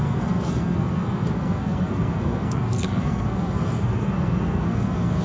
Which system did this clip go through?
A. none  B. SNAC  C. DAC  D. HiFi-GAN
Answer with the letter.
B